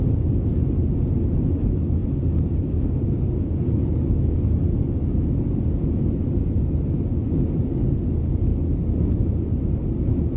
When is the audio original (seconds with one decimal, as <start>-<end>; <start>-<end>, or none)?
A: 0.0-10.4